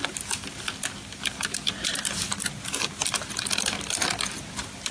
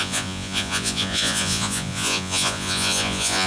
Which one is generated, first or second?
second